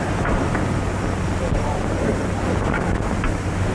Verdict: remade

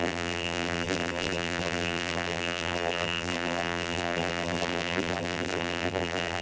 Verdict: remade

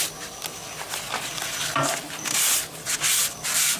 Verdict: recorded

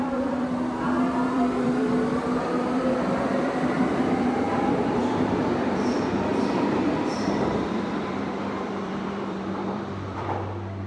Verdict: remade